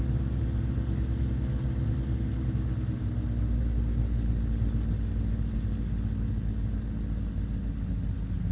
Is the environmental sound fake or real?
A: real